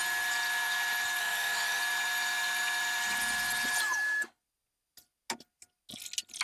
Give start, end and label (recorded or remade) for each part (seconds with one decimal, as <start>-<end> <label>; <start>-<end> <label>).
0.0-1.2 recorded; 1.2-1.8 remade; 1.8-6.4 recorded